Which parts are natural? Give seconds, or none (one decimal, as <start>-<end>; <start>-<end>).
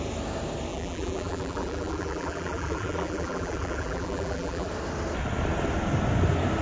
0.0-0.7; 4.7-6.6